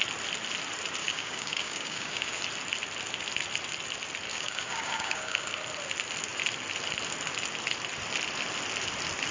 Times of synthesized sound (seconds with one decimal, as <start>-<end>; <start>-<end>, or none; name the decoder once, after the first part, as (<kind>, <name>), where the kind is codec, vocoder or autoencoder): 1.0-2.4 (codec, DAC); 4.3-5.5